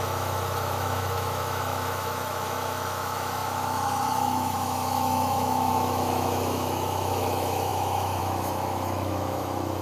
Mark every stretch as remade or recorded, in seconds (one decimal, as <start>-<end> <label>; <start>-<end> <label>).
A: 0.0-9.8 remade